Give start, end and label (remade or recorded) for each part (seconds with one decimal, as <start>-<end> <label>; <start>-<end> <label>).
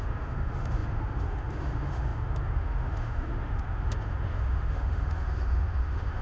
0.0-6.2 remade